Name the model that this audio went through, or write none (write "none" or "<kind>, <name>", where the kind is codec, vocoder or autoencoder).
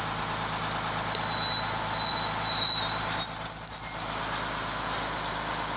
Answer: none